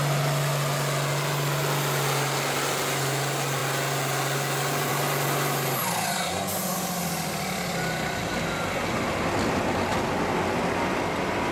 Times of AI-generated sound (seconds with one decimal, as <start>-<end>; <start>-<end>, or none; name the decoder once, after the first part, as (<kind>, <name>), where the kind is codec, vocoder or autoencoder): none